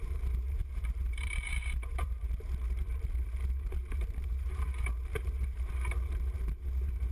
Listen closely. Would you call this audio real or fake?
fake